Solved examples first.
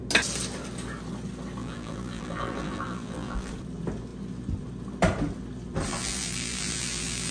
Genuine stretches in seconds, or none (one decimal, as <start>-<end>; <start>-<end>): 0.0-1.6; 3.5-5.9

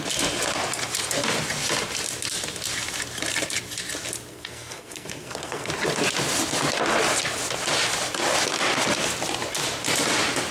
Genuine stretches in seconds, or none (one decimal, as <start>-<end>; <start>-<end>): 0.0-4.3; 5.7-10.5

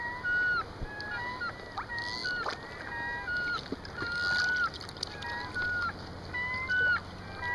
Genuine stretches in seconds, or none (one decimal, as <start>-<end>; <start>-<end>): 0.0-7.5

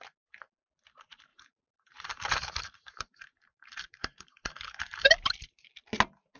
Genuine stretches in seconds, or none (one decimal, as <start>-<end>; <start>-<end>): 0.0-1.3; 5.1-6.4